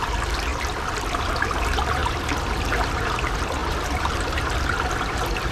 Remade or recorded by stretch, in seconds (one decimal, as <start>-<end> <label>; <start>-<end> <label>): 0.0-5.5 recorded